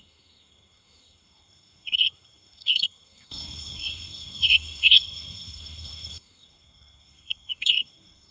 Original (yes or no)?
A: no